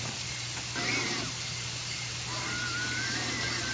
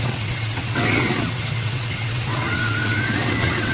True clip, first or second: first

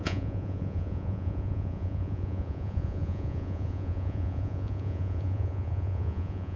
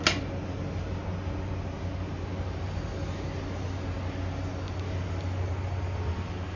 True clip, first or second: second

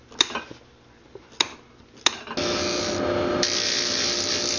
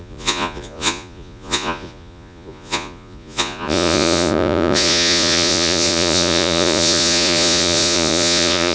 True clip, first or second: first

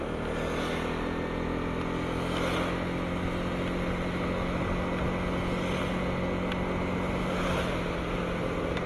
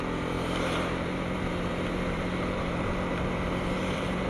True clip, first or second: first